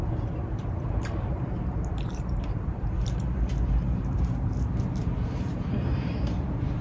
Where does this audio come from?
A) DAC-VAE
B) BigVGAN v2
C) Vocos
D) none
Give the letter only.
B